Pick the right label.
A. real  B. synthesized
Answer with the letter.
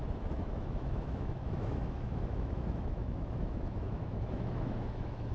B